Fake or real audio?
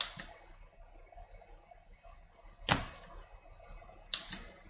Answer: real